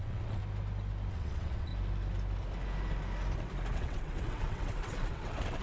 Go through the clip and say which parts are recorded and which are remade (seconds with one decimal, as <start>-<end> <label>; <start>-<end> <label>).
0.0-0.4 remade; 0.4-1.1 recorded; 1.1-1.7 remade; 1.7-3.7 recorded; 3.7-5.6 remade

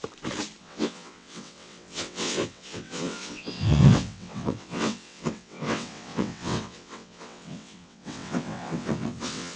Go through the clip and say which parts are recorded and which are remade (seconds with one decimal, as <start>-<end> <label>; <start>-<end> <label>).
0.0-0.6 recorded; 0.6-9.6 remade

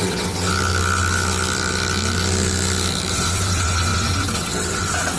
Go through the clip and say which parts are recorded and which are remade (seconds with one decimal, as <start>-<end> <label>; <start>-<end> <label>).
0.0-0.5 remade; 0.5-3.1 recorded; 3.1-5.2 remade

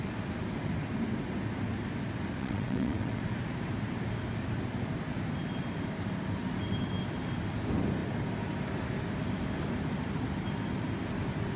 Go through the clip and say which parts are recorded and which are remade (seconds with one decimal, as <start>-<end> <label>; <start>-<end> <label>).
0.0-2.4 recorded; 2.4-3.2 remade; 3.2-11.6 recorded

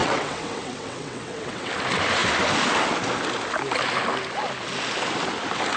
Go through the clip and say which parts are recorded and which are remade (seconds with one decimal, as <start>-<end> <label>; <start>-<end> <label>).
0.0-1.7 remade; 1.7-5.8 recorded

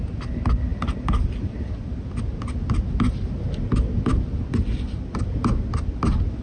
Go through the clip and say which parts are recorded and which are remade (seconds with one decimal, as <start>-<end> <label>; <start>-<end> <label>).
0.0-6.4 recorded

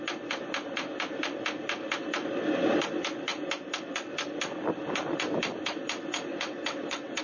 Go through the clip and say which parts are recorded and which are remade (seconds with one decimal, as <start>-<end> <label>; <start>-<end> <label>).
0.0-6.3 recorded; 6.3-7.2 remade